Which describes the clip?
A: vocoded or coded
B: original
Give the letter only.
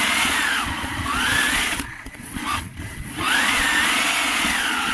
A